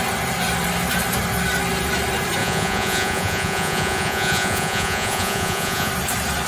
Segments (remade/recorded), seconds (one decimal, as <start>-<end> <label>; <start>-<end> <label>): 0.0-2.4 recorded; 2.4-5.9 remade; 5.9-6.5 recorded